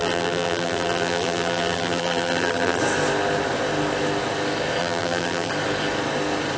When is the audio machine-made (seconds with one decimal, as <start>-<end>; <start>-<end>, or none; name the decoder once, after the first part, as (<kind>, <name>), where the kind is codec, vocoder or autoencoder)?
0.0-2.8 (vocoder, BigVGAN v2); 4.8-5.5